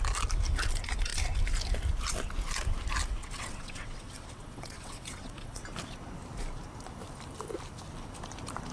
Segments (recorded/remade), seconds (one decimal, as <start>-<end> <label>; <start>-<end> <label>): 0.0-3.2 recorded; 3.2-5.6 remade; 5.6-8.7 recorded